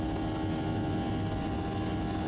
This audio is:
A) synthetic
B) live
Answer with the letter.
B